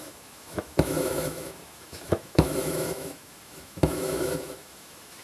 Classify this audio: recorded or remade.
remade